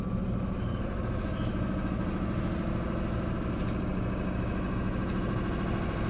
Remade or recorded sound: recorded